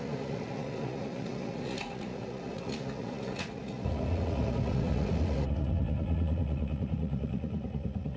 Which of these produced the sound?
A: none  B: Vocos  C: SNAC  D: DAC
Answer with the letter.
B